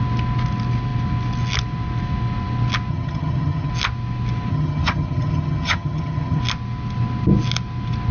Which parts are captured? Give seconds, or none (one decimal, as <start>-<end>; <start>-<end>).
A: 0.0-2.9; 3.7-4.5; 6.4-8.1